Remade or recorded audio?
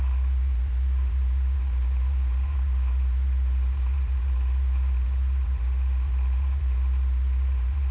remade